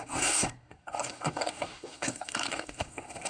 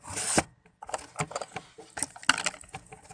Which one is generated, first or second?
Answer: first